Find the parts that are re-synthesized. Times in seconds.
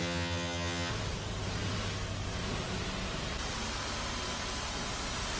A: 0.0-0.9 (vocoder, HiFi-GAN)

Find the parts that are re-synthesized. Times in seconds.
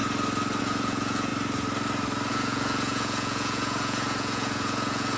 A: 0.6-1.3 (vocoder, Vocos); 2.3-5.2